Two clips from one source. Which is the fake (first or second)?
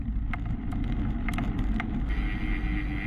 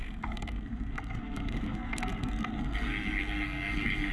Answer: second